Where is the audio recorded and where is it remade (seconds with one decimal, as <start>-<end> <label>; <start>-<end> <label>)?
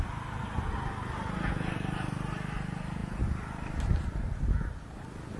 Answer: 0.0-5.4 recorded